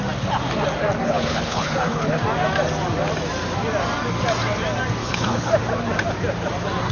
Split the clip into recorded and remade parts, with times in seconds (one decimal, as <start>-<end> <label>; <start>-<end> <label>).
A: 0.0-1.0 recorded; 1.0-2.2 remade; 2.2-5.0 recorded; 5.0-5.5 remade; 5.5-6.9 recorded